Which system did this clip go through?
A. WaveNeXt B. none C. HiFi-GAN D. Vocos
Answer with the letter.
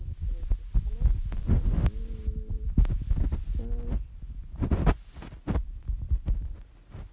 B